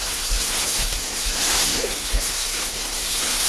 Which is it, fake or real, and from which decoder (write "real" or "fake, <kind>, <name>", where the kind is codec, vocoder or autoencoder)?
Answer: fake, codec, SNAC